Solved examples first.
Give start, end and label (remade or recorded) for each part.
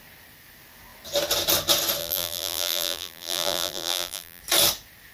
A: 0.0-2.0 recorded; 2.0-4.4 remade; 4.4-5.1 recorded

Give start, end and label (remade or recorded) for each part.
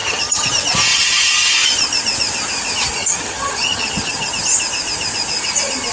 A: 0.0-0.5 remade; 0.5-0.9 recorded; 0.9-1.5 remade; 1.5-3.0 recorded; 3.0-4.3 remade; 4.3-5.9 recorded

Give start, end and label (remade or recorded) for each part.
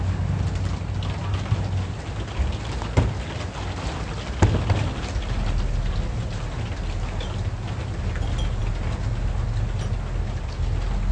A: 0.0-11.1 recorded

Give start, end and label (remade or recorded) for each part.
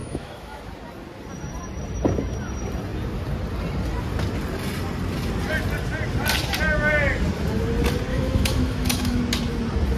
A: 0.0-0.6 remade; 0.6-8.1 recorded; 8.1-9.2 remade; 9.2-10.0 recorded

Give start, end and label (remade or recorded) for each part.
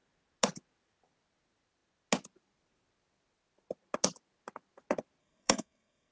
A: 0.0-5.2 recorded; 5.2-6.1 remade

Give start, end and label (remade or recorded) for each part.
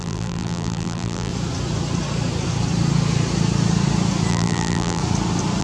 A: 0.0-1.3 remade; 1.3-4.3 recorded; 4.3-5.0 remade; 5.0-5.6 recorded